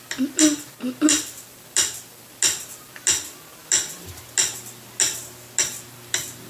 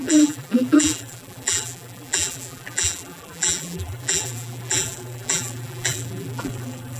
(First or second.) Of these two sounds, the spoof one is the second